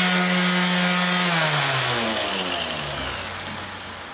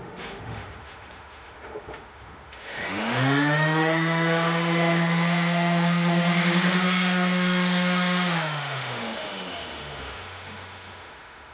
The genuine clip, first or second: first